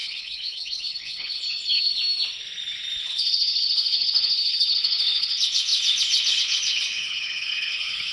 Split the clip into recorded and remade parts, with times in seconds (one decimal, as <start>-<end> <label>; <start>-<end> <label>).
0.0-1.9 remade; 1.9-3.0 recorded; 3.0-8.1 remade